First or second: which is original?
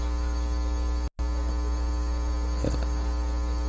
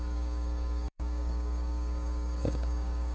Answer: first